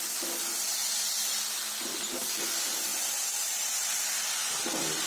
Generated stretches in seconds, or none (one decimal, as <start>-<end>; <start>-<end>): none